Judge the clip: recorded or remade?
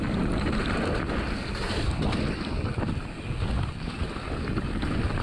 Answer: recorded